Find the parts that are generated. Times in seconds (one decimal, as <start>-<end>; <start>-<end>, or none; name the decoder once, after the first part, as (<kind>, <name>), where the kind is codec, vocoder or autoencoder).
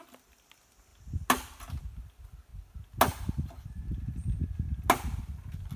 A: none